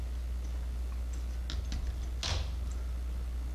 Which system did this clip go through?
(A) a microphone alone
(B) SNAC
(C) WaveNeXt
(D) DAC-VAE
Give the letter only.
A